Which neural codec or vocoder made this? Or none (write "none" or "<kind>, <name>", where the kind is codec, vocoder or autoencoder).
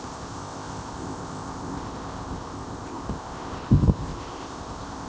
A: codec, ZipCodec